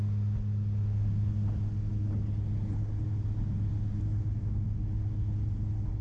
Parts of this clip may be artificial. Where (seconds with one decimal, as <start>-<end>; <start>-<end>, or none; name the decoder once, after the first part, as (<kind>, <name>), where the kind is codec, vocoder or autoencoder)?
none